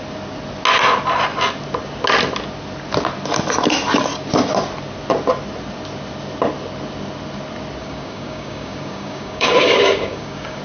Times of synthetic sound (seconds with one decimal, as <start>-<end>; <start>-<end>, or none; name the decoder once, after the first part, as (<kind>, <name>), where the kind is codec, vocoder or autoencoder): 7.8-10.6 (codec, DAC)